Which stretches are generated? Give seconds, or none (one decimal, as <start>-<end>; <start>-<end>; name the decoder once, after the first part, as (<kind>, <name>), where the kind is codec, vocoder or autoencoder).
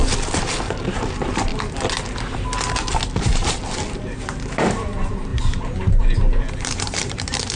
0.8-1.5 (vocoder, BigVGAN v2); 3.2-5.3; 6.6-7.6